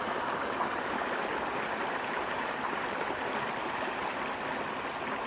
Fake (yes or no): no